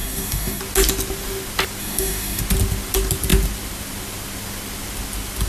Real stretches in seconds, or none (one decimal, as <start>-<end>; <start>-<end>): 0.6-1.8; 2.4-5.5